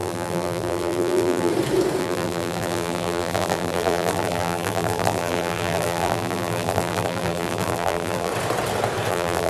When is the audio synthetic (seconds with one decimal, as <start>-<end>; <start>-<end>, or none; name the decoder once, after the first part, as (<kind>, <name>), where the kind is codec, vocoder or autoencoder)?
0.0-1.5 (vocoder, BigVGAN v2); 2.0-8.3; 9.1-9.5